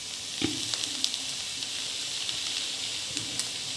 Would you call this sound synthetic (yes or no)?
no